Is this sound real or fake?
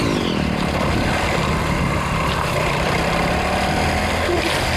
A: real